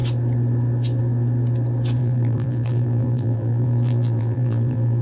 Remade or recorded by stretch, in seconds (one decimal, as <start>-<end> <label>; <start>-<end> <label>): 0.0-2.0 recorded; 2.0-5.0 remade